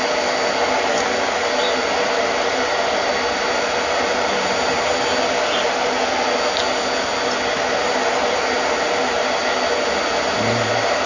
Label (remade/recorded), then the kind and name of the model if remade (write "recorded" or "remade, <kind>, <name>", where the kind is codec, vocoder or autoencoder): recorded